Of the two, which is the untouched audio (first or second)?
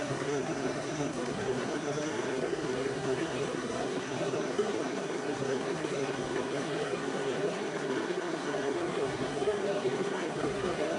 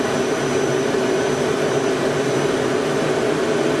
second